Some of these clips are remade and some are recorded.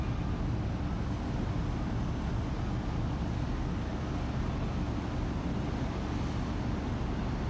recorded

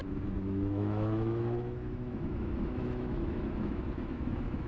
remade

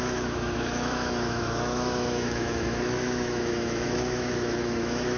remade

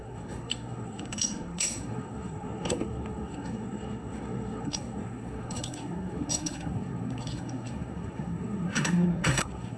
remade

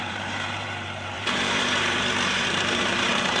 remade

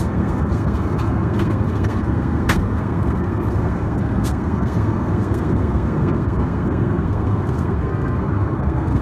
remade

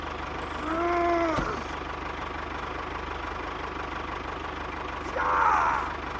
recorded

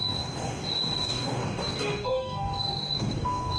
remade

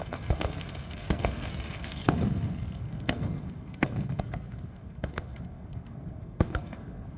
remade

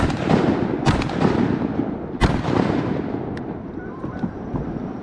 recorded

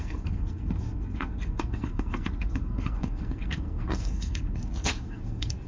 remade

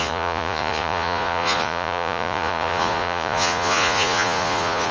remade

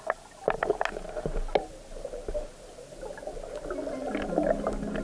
recorded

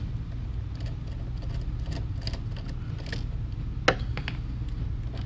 recorded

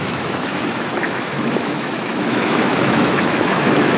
remade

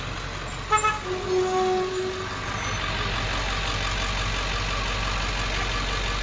recorded